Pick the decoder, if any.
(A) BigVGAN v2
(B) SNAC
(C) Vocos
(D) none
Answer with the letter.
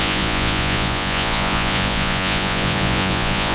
C